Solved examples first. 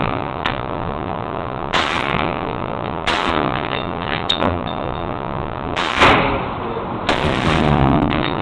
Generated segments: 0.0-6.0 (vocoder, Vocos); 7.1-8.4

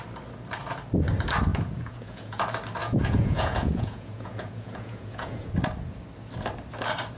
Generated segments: 1.5-2.4 (vocoder, Vocos); 2.8-5.5